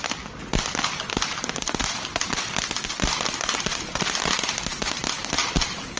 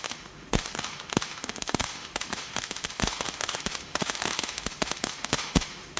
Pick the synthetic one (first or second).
second